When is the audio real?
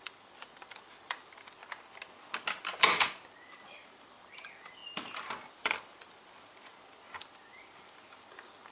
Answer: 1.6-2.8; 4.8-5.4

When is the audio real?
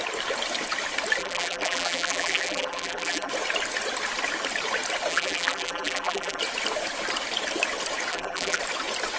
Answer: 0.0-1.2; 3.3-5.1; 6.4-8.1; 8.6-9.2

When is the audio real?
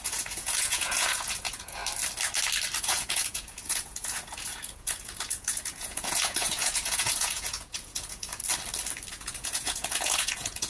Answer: 1.8-2.8; 8.4-9.1